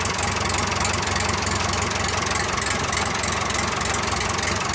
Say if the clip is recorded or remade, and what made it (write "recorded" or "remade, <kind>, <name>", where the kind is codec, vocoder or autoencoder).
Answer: recorded